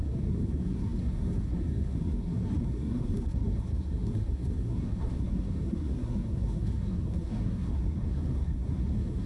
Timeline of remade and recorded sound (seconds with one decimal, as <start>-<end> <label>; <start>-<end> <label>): 0.0-9.3 remade